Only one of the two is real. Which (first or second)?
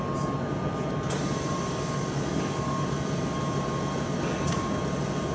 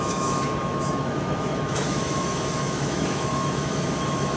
first